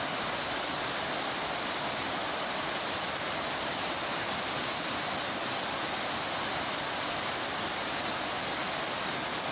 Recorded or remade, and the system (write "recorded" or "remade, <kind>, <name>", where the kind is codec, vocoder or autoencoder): recorded